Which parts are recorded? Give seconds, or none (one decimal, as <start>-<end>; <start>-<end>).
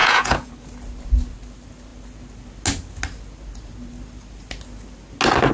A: 0.5-5.5